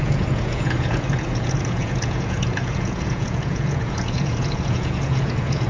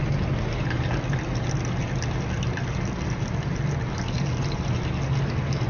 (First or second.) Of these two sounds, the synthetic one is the first